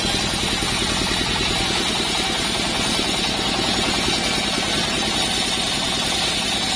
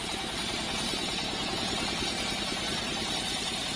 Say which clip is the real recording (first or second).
first